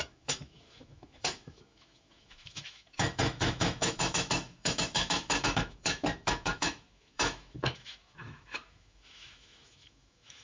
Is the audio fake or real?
fake